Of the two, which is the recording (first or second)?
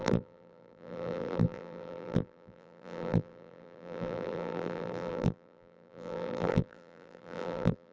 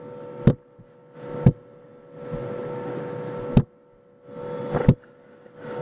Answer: second